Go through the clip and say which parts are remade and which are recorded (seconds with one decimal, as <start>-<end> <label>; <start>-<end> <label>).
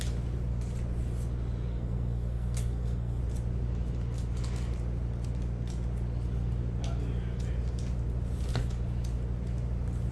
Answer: 0.0-1.7 recorded; 1.7-3.2 remade; 3.2-10.1 recorded